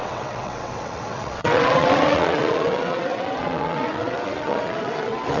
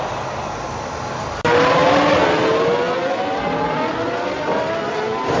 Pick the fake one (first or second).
first